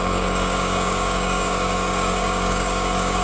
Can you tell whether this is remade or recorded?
remade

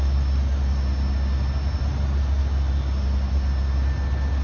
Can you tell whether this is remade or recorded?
recorded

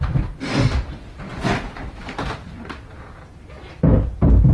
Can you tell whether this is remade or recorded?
recorded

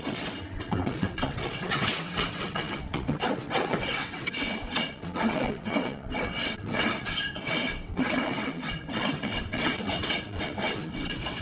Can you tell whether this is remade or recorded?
remade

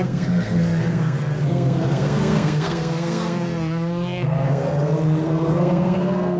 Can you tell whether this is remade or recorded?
remade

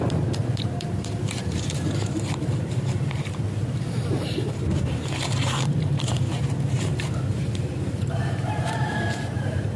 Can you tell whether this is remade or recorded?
remade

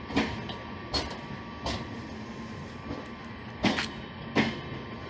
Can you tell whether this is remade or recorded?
recorded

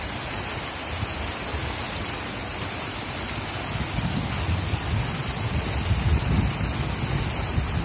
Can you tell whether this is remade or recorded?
recorded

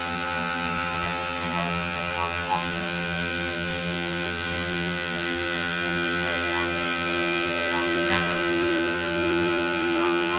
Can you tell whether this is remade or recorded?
remade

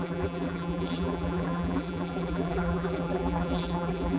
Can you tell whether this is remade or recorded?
remade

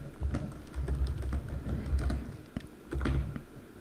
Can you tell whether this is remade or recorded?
recorded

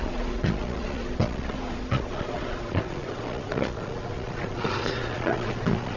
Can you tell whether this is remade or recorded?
remade